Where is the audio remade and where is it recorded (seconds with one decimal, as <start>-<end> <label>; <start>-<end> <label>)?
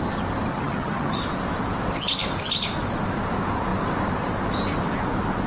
0.0-0.5 recorded; 0.5-1.2 remade; 1.2-5.5 recorded